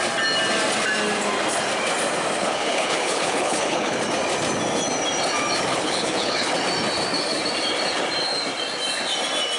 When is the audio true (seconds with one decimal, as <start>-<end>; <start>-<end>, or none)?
0.0-2.4; 4.0-5.7; 6.5-9.6